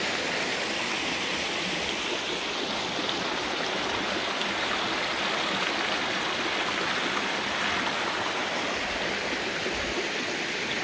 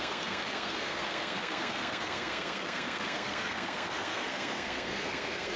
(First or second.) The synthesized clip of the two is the second